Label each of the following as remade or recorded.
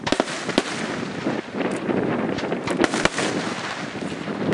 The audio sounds recorded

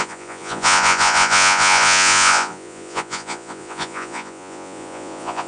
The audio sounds remade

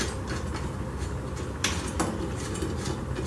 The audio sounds recorded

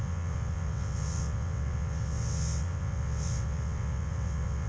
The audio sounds remade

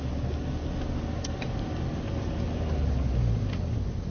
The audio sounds recorded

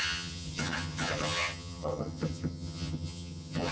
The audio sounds remade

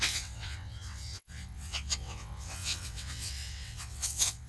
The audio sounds remade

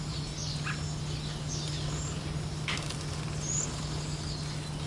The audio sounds recorded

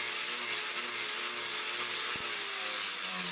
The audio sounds recorded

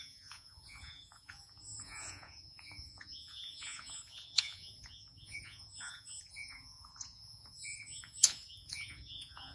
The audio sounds remade